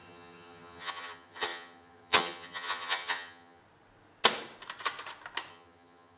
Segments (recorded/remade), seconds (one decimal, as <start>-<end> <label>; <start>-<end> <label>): 0.0-3.6 remade; 3.6-5.5 recorded; 5.5-6.2 remade